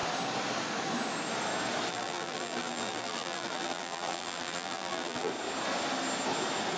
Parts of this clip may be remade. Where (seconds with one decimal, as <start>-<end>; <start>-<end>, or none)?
1.9-5.3